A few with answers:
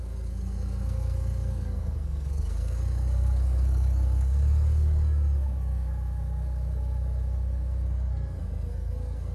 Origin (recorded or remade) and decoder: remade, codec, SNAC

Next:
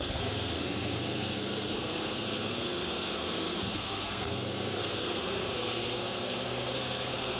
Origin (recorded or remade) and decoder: remade, codec, SNAC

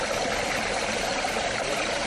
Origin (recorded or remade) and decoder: recorded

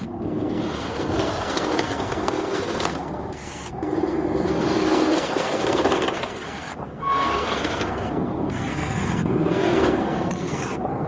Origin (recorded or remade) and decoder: remade, codec, SNAC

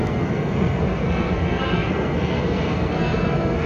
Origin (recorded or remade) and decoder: remade, codec, SNAC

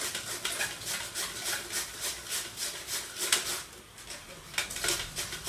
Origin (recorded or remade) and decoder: recorded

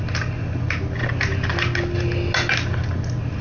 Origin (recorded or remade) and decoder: recorded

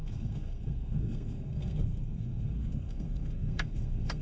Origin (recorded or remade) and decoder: remade, codec, SNAC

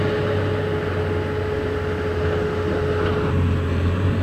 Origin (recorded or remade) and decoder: recorded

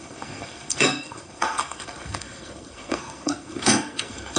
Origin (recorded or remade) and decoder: remade, codec, SNAC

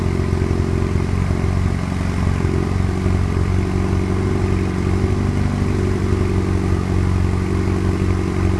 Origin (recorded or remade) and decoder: recorded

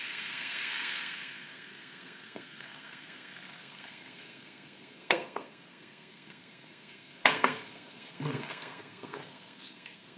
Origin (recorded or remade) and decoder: remade, codec, SNAC